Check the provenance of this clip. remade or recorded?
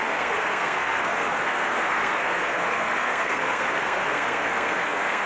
remade